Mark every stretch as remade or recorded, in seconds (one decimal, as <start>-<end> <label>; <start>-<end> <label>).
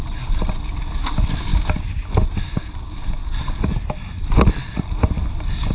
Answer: 0.0-5.7 recorded